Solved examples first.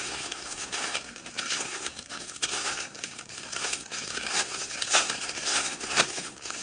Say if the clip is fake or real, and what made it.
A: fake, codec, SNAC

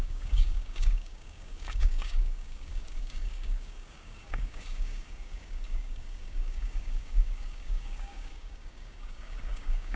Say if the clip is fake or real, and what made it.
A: fake, codec, DAC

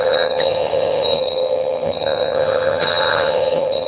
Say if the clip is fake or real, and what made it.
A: fake, vocoder, HiFi-GAN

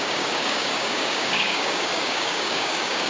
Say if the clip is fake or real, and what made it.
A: fake, codec, DAC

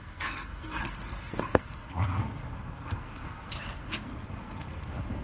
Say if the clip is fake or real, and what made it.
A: fake, codec, SNAC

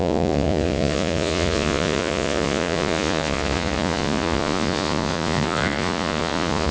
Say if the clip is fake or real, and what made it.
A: fake, vocoder, Vocos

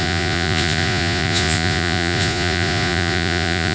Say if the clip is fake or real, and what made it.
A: fake, vocoder, Vocos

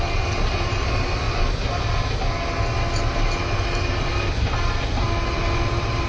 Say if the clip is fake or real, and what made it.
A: real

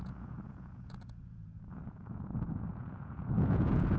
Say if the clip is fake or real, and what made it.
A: fake, vocoder, Vocos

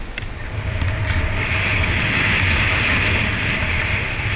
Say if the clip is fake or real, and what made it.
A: real